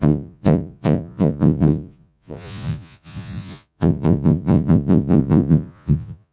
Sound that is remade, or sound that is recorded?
remade